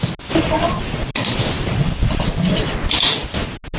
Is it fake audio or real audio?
real